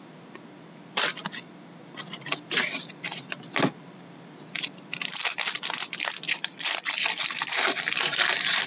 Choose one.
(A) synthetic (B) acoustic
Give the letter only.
A